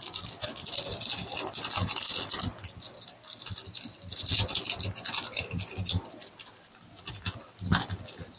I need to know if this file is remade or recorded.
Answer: recorded